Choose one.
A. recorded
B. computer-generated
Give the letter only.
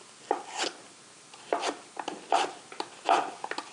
A